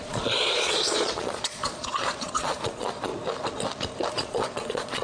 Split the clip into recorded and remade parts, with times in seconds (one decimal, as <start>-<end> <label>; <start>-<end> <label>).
0.0-3.1 remade; 3.1-4.1 recorded; 4.1-5.0 remade